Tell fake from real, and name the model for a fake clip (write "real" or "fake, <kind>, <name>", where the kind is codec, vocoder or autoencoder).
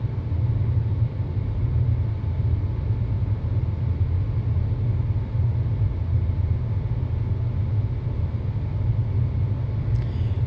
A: real